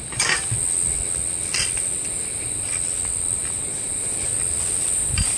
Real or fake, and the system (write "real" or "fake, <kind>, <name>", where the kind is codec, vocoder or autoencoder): real